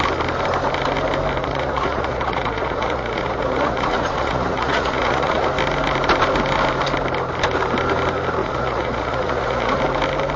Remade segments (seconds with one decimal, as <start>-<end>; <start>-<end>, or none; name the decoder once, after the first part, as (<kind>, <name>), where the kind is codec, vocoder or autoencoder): 1.4-5.5 (vocoder, Vocos); 8.4-9.8